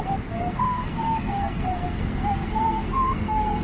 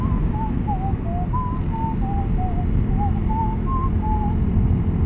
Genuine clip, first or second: second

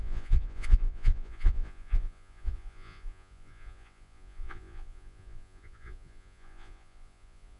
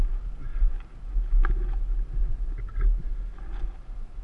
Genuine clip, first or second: second